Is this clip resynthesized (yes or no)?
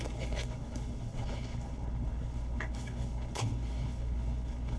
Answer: yes